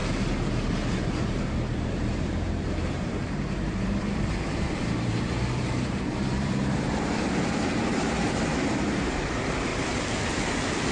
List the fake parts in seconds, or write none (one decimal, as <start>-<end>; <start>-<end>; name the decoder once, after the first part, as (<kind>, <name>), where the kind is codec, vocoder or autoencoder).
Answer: 1.2-9.7 (vocoder, BigVGAN v2); 10.4-10.9